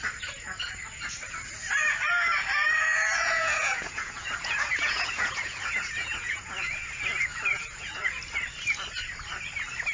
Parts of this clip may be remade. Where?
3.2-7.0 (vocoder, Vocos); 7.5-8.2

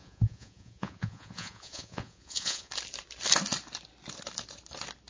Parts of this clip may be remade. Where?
0.0-2.7 (vocoder, Vocos)

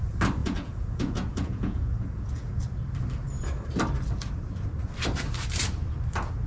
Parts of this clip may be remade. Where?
0.4-2.6 (vocoder, Vocos)

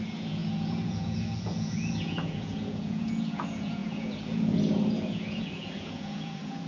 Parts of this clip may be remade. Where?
0.0-6.7 (vocoder, Vocos)

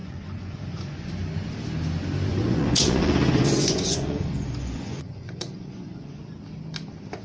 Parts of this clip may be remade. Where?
0.0-1.1 (vocoder, Vocos); 2.3-6.2